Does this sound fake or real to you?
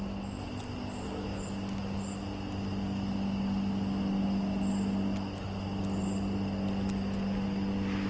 real